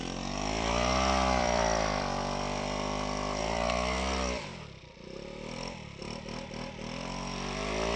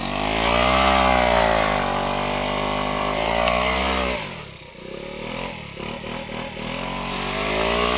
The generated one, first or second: first